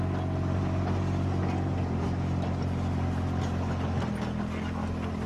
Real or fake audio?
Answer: real